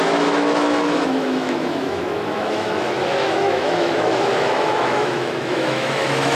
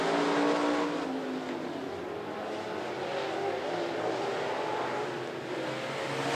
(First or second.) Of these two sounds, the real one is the second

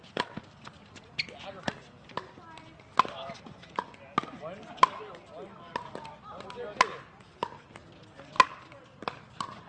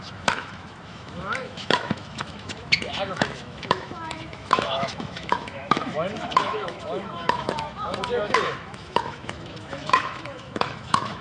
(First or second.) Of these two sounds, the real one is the first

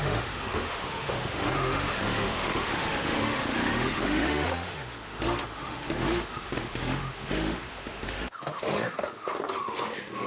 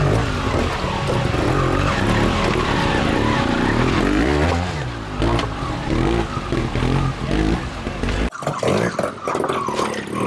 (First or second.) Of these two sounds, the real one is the second